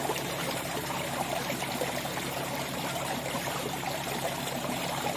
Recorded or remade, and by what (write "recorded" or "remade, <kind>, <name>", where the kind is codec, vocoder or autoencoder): remade, vocoder, BigVGAN v2